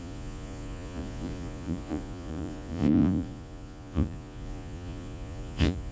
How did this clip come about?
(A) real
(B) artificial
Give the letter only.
B